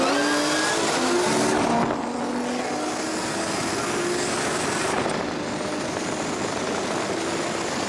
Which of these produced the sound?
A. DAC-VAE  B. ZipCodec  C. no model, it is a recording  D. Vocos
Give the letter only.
C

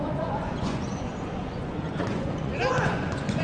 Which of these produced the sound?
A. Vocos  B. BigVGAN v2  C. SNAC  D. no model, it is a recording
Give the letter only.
A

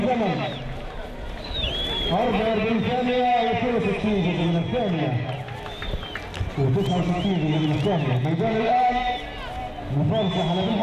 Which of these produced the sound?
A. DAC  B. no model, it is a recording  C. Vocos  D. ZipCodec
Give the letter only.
B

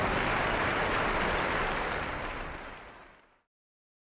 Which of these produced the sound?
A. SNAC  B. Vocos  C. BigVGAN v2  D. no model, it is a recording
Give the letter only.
D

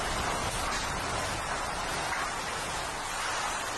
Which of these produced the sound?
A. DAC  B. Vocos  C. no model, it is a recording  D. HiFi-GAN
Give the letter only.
C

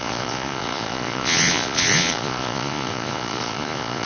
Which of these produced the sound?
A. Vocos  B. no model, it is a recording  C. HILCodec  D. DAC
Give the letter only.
A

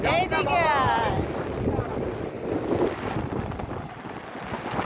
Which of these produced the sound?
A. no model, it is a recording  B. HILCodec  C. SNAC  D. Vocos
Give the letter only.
A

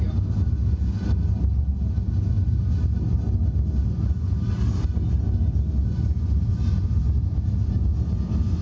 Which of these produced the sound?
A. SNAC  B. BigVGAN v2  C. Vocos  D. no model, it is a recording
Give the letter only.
D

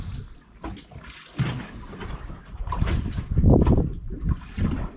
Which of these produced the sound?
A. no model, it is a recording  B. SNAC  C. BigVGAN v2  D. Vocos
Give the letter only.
A